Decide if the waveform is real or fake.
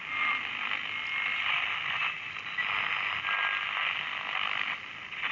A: real